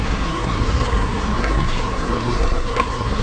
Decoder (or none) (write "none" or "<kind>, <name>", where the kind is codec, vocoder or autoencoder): codec, SNAC